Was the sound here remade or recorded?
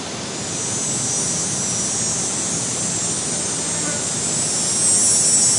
recorded